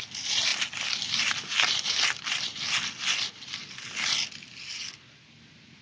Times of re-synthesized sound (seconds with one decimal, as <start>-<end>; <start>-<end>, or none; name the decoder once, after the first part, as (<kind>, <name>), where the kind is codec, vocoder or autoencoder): none